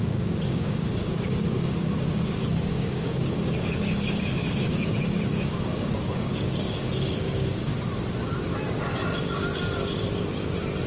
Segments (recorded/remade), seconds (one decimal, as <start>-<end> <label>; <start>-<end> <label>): 0.0-7.7 remade; 7.7-10.9 recorded